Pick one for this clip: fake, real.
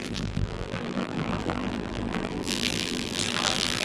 fake